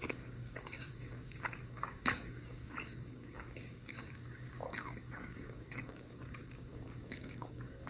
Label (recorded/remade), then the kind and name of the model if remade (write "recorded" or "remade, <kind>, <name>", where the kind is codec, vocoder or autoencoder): remade, codec, DAC